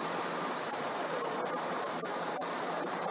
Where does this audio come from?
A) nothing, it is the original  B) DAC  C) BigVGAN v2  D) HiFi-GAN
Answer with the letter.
C